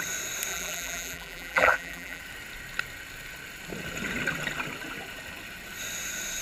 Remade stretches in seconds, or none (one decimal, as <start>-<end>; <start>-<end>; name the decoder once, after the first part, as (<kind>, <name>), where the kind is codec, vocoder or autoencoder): 0.5-2.2 (vocoder, BigVGAN v2)